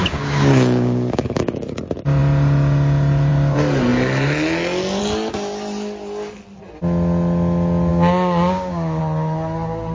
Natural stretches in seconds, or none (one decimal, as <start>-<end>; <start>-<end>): 1.8-7.9; 9.0-9.9